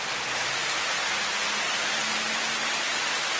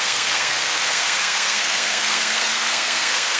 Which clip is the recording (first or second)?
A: first